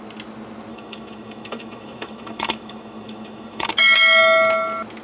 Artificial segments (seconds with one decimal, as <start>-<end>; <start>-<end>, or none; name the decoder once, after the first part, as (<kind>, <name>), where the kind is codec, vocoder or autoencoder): 0.7-3.7 (autoencoder, DAC-VAE)